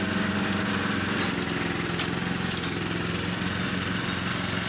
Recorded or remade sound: recorded